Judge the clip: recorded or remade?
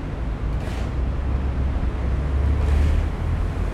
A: recorded